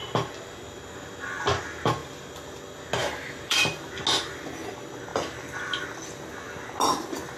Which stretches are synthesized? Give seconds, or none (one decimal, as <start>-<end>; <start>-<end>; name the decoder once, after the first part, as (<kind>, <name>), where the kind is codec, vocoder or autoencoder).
2.0-2.6 (vocoder, BigVGAN v2); 3.0-3.9